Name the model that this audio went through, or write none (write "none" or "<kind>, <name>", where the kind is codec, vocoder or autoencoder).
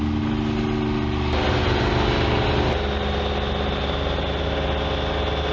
none